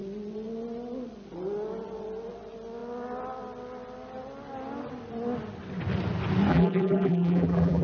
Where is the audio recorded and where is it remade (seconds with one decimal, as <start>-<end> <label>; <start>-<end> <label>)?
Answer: 0.0-6.5 recorded; 6.5-7.8 remade